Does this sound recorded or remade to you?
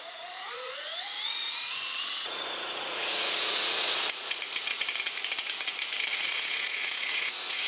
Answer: remade